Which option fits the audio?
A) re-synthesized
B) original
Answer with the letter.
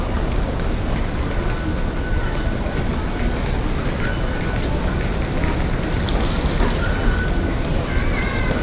B